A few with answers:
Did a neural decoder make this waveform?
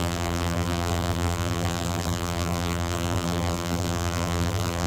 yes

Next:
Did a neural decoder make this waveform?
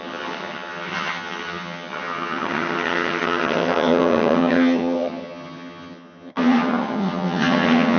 yes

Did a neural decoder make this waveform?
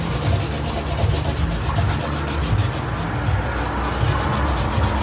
no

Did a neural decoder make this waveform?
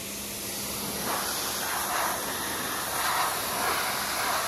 no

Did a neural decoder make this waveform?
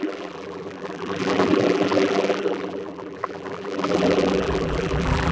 yes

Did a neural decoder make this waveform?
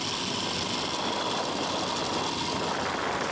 no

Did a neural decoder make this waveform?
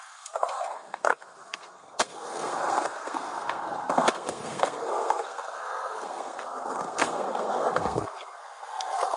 yes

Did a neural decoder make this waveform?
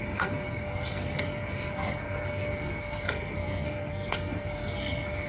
yes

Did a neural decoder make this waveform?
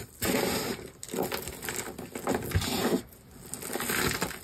no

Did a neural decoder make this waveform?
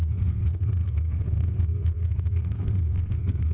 yes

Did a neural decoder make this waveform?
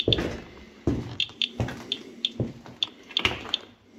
no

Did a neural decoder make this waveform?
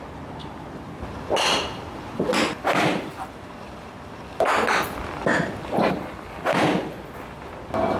no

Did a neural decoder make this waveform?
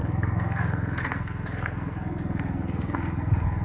yes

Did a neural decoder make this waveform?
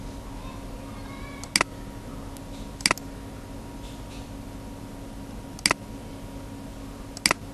no